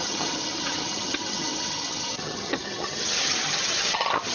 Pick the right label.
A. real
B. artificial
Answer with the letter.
B